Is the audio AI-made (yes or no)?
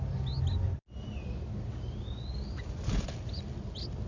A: no